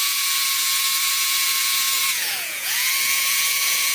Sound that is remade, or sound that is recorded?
remade